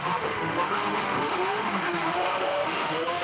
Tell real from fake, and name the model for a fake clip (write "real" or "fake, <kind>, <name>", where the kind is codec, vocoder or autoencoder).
fake, autoencoder, DAC-VAE